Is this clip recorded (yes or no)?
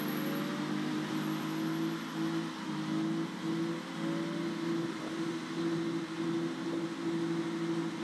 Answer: yes